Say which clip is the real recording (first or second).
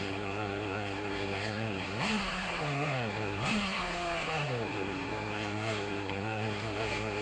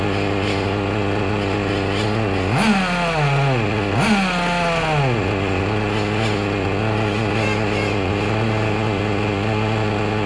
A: second